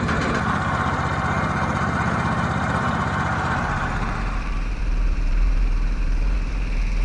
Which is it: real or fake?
fake